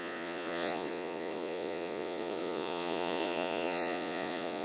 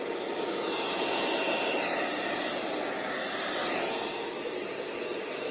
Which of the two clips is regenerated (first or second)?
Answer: first